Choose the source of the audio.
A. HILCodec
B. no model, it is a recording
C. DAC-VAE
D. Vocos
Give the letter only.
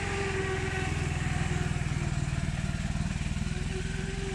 B